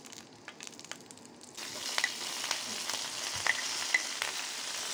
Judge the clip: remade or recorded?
recorded